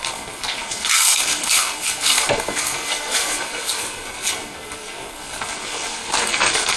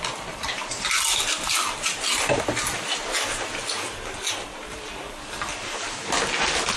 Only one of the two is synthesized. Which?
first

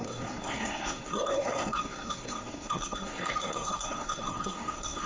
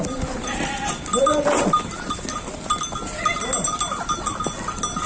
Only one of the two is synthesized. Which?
first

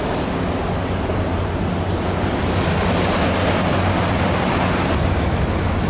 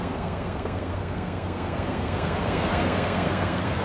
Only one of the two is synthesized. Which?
second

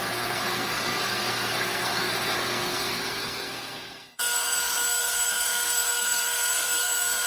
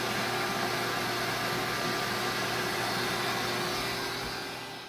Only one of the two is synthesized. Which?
first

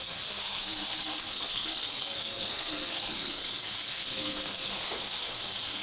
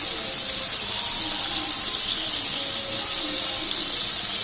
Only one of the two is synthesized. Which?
first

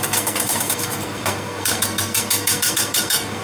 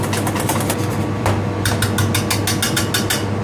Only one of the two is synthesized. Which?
first